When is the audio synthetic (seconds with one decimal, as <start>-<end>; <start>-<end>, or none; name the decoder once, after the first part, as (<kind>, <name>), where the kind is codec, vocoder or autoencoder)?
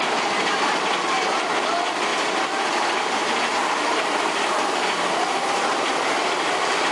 none